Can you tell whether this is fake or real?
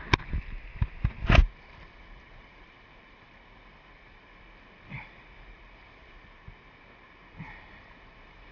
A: real